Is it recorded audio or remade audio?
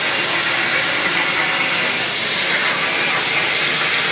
recorded